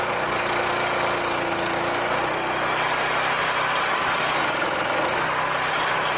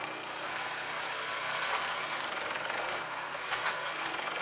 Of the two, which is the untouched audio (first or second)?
first